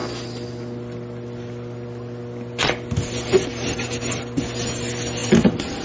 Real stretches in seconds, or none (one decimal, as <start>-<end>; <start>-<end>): 0.0-5.8